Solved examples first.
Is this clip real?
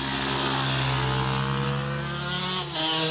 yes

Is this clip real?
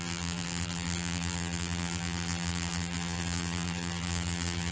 no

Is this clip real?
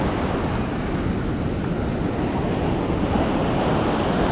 yes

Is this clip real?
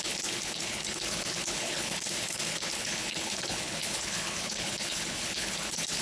no